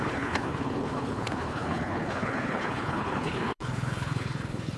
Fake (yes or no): yes